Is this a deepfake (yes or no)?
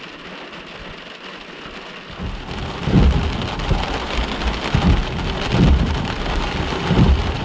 no